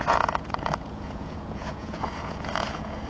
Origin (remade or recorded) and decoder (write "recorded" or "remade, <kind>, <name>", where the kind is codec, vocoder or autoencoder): remade, vocoder, Vocos